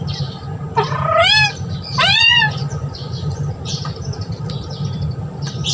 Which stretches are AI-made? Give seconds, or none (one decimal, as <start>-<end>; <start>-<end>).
2.1-3.5